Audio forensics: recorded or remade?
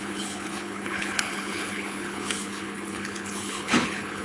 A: remade